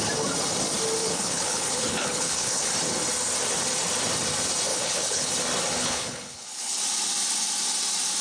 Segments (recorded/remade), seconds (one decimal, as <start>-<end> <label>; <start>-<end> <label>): 0.0-1.0 recorded; 1.0-2.7 remade; 2.7-4.7 recorded; 4.7-5.3 remade; 5.3-5.8 recorded; 5.8-6.8 remade; 6.8-8.2 recorded